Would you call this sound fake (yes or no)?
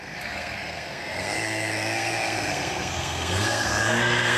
yes